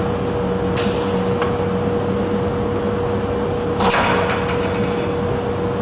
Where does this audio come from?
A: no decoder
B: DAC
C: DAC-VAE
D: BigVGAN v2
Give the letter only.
A